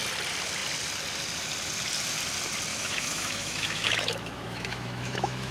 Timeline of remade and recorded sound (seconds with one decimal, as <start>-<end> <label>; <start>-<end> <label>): 0.0-2.7 recorded; 2.7-5.5 remade